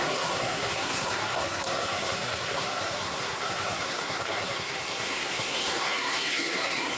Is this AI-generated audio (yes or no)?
yes